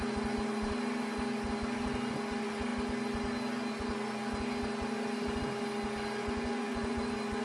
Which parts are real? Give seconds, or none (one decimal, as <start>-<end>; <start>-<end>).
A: 0.0-6.2; 7.0-7.4